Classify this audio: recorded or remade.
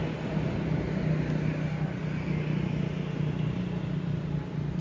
recorded